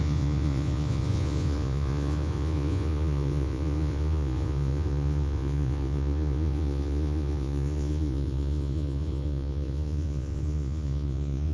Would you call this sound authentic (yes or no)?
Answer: no